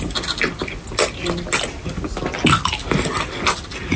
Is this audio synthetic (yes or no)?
no